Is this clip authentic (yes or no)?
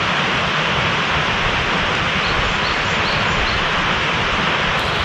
yes